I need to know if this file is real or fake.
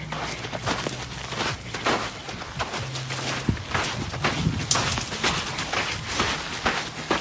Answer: real